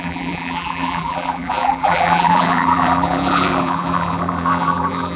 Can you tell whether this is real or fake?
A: fake